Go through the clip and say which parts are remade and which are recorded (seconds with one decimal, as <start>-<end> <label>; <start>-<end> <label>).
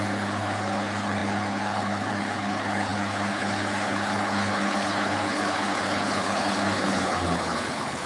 0.0-8.1 remade